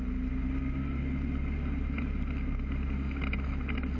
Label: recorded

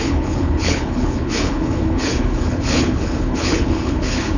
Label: remade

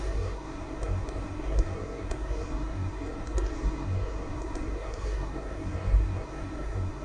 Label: remade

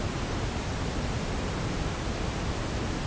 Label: recorded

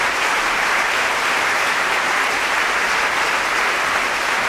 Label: remade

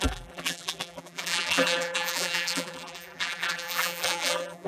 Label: remade